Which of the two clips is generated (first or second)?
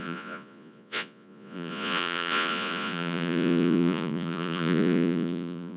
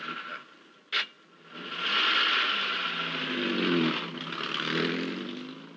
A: first